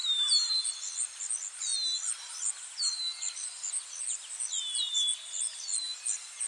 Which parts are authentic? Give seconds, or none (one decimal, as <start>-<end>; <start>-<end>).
0.0-6.5